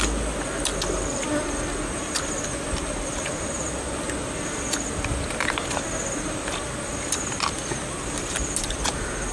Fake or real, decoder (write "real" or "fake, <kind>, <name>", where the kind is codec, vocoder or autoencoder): real